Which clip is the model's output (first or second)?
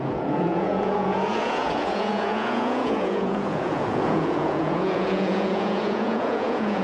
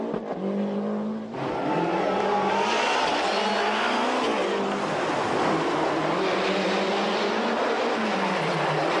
first